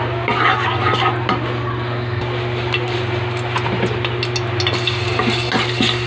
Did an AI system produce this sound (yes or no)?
no